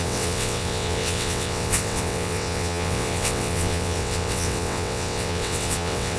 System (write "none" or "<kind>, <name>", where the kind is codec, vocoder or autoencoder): vocoder, WaveNeXt